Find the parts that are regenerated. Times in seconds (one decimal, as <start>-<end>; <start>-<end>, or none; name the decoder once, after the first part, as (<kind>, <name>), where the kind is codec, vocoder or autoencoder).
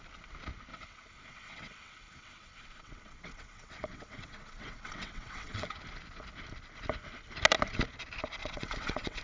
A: 0.7-5.7 (vocoder, WaveNeXt); 8.4-9.2